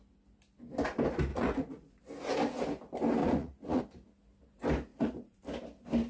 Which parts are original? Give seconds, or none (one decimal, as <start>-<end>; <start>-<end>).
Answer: 0.0-1.3; 2.0-3.2; 3.8-4.9; 5.4-6.1